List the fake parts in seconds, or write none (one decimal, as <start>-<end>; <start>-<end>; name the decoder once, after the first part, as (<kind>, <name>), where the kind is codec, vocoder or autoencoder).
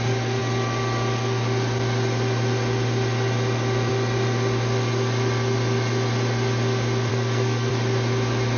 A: 7.1-7.7 (codec, SNAC)